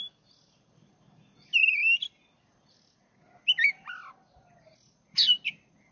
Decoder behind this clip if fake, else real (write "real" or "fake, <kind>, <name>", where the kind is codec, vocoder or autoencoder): real